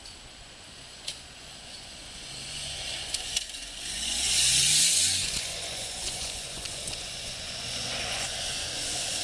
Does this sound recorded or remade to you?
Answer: remade